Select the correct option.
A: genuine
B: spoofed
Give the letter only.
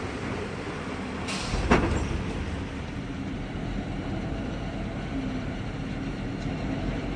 B